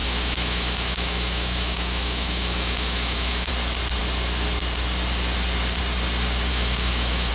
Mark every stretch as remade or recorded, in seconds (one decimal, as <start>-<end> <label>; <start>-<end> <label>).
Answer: 0.0-3.5 remade; 3.5-6.5 recorded; 6.5-7.3 remade

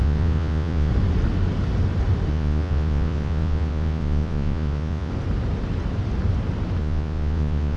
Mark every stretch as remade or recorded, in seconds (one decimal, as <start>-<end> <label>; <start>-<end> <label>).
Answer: 0.0-0.9 remade; 0.9-2.3 recorded; 2.3-5.1 remade; 5.1-6.8 recorded; 6.8-7.8 remade

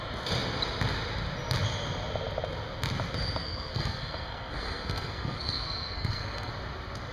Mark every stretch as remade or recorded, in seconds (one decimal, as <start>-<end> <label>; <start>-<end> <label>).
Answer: 0.0-3.4 recorded; 3.4-6.5 remade; 6.5-7.1 recorded